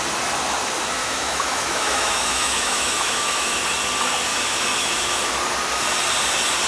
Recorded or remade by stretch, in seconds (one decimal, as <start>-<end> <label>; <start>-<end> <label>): 0.0-1.0 recorded; 1.0-3.6 remade; 3.6-4.3 recorded; 4.3-5.1 remade; 5.1-6.7 recorded